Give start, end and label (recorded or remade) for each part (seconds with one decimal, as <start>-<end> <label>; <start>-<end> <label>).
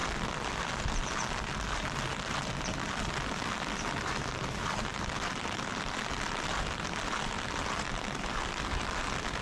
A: 0.0-9.4 recorded